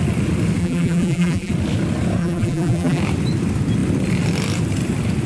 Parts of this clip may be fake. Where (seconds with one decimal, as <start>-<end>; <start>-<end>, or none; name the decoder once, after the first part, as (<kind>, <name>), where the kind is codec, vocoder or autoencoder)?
0.6-1.5 (vocoder, BigVGAN v2); 2.2-3.0

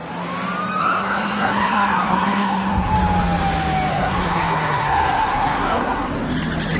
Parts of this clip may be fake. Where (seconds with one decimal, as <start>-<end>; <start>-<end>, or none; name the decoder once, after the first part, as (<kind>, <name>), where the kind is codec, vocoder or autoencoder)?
0.8-2.9 (codec, SNAC); 3.9-6.1

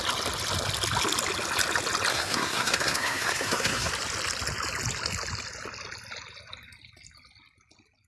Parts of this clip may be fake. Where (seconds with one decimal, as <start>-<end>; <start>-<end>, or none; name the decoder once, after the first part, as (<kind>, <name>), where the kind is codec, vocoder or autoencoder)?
2.1-3.9 (codec, SNAC)

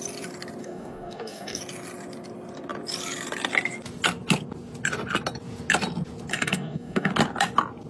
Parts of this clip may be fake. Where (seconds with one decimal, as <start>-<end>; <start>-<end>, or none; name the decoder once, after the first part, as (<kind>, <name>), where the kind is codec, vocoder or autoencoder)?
0.6-1.6 (codec, DAC); 6.3-7.1

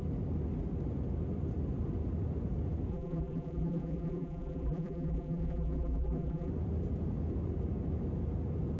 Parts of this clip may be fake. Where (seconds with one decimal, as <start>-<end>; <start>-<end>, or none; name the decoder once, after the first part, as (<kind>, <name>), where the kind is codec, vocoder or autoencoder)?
2.9-6.5 (vocoder, BigVGAN v2)